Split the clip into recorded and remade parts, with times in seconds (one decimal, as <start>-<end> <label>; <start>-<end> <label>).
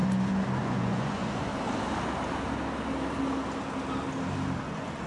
0.0-0.6 recorded; 0.6-1.5 remade; 1.5-4.6 recorded; 4.6-5.1 remade